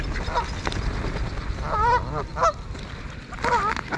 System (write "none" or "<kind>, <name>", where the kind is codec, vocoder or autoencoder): none